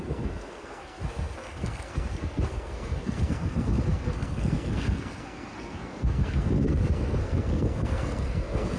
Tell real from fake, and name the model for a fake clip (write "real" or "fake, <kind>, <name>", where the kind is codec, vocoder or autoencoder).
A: fake, codec, SNAC